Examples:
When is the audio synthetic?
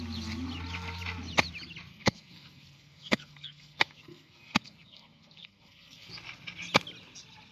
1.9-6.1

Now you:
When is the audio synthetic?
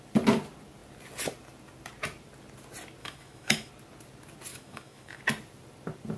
3.0-3.7; 4.5-5.2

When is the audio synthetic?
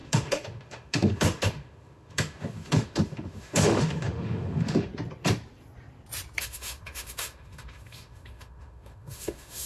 0.0-4.9; 6.4-9.7